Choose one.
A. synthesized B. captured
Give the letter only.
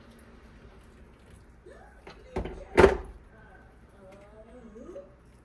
B